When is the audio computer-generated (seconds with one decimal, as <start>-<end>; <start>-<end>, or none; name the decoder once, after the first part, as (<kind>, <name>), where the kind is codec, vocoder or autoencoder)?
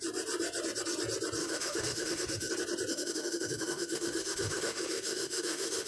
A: 1.4-2.5 (autoencoder, DAC-VAE); 2.9-5.9